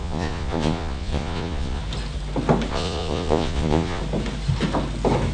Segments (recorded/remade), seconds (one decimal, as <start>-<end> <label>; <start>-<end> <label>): 0.0-1.8 remade; 1.8-2.7 recorded; 2.7-4.0 remade; 4.0-5.3 recorded